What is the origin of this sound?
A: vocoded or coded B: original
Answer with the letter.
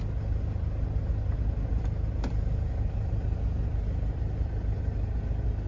B